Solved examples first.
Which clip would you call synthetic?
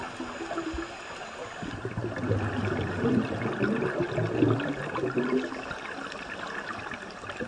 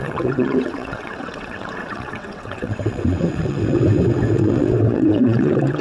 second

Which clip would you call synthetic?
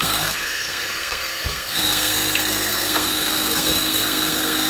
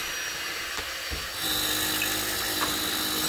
first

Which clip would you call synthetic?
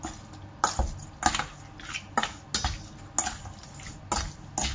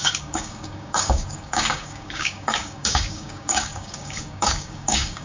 second